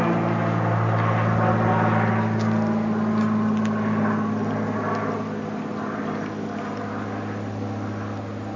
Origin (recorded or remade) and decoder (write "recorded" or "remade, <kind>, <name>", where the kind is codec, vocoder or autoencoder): recorded